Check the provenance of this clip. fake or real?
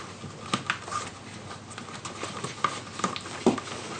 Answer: real